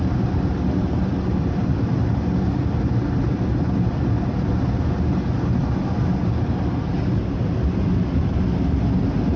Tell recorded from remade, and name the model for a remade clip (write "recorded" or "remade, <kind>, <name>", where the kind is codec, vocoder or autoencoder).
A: recorded